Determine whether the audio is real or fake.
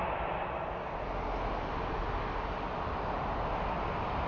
real